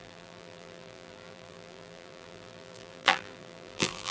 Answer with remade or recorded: remade